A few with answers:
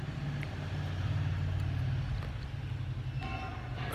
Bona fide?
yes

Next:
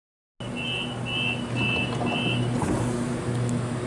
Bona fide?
yes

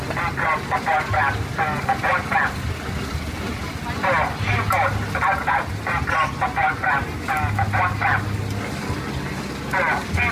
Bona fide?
yes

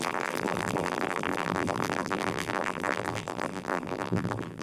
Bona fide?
no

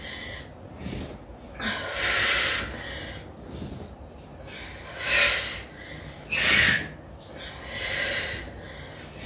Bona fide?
yes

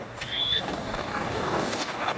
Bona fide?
no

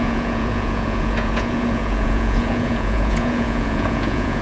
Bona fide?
no